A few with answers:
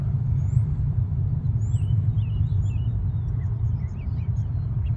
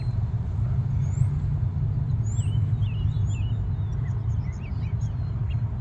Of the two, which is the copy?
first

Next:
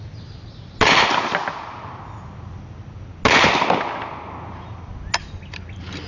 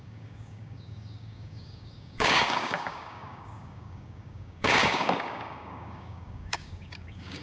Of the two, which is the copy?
second